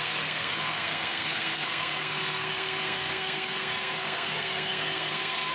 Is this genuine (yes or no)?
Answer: no